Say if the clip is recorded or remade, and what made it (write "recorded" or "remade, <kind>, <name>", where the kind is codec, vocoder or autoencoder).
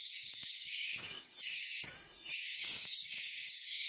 remade, codec, DAC